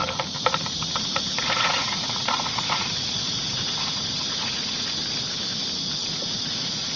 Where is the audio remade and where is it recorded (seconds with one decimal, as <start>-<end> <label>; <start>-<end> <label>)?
0.0-0.7 recorded; 0.7-5.0 remade; 5.0-6.0 recorded; 6.0-7.0 remade